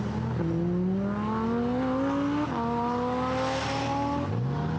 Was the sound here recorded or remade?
recorded